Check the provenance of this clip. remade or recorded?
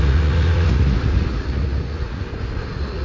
remade